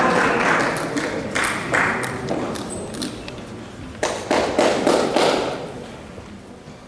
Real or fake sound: real